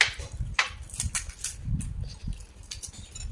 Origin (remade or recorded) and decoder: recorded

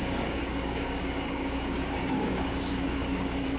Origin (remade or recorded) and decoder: remade, codec, DAC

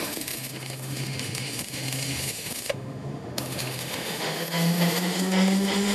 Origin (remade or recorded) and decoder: remade, autoencoder, DAC-VAE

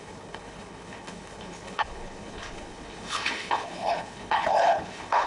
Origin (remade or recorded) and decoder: remade, codec, HILCodec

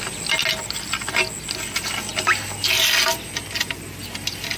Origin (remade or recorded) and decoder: recorded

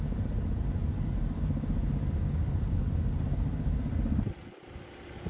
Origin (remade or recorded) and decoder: recorded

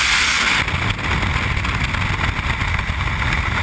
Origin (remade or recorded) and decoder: recorded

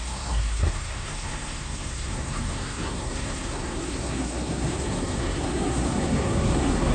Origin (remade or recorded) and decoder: remade, codec, SNAC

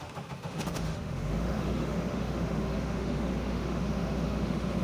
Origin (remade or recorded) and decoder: remade, autoencoder, DAC-VAE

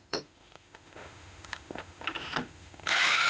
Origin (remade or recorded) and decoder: remade, autoencoder, DAC-VAE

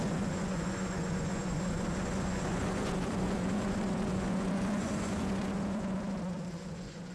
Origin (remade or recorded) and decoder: remade, vocoder, Vocos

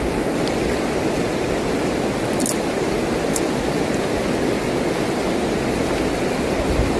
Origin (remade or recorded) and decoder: recorded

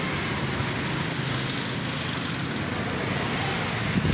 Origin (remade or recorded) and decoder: recorded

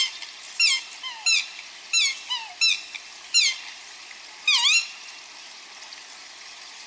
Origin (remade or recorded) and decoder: recorded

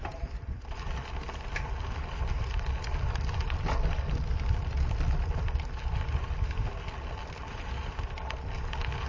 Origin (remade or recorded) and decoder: recorded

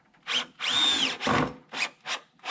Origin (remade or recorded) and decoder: recorded